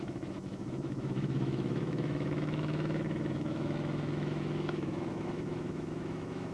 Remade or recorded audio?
remade